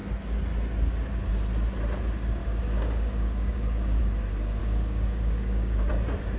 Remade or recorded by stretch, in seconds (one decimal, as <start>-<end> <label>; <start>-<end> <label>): 0.0-2.4 recorded; 2.4-4.0 remade; 4.0-4.6 recorded; 4.6-5.9 remade; 5.9-6.4 recorded